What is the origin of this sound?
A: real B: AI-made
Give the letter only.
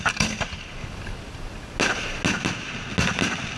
A